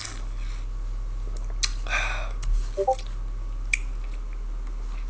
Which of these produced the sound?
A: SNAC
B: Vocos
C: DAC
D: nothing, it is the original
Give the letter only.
D